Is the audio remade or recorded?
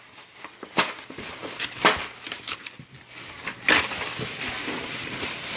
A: recorded